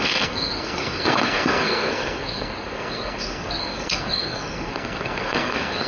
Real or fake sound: fake